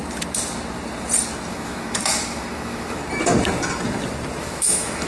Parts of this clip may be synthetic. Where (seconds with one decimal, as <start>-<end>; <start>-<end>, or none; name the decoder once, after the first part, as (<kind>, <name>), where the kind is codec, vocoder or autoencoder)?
1.5-3.0 (autoencoder, DAC-VAE); 4.4-5.1